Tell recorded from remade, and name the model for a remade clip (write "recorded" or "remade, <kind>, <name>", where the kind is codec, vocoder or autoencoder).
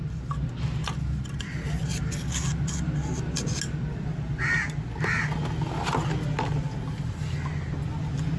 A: recorded